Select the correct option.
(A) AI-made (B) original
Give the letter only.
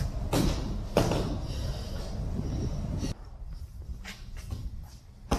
B